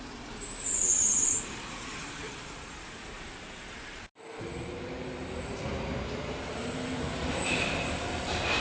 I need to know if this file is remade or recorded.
remade